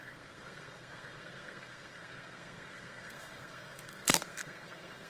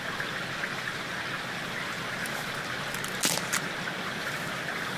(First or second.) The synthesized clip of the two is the first